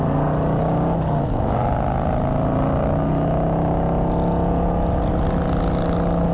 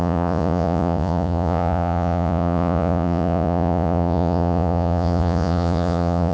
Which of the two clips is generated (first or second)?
second